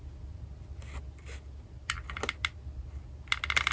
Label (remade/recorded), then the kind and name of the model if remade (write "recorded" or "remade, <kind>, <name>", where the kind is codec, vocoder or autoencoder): recorded